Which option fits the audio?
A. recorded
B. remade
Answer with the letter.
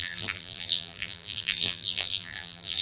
B